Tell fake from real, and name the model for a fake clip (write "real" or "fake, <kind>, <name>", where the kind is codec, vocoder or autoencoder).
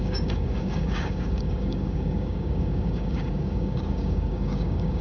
fake, codec, DAC